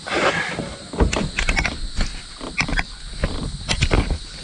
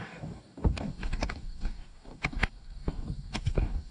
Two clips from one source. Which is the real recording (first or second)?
first